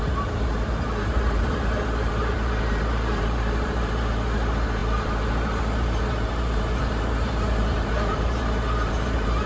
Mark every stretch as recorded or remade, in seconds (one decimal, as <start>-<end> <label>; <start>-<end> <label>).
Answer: 0.0-9.5 remade